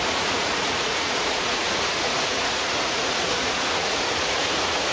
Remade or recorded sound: remade